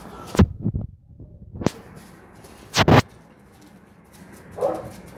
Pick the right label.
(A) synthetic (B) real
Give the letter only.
B